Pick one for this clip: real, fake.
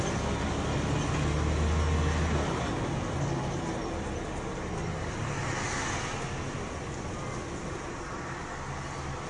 real